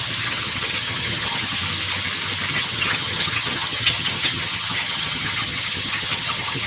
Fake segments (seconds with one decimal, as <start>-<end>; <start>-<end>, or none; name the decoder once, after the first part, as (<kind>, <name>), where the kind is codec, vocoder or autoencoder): 0.0-1.6 (vocoder, HiFi-GAN); 2.5-6.7